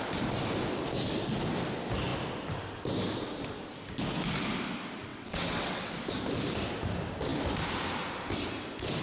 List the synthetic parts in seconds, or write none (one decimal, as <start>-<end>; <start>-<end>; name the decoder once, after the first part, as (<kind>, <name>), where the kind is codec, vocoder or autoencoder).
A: 5.1-5.9 (vocoder, WaveNeXt)